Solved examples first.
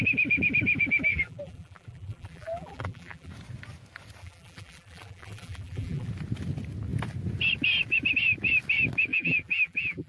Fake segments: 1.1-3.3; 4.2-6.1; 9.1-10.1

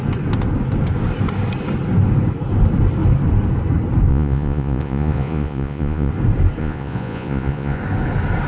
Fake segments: 4.1-6.1; 6.6-7.8

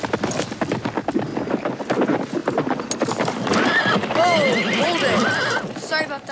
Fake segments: 0.0-1.3; 1.8-2.4; 3.1-4.0; 4.7-6.3

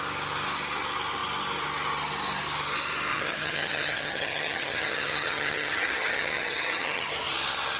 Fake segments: 3.1-7.1

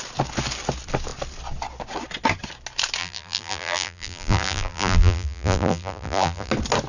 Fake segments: 3.0-6.5

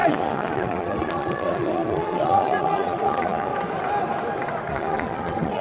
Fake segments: 0.0-3.5; 4.7-5.6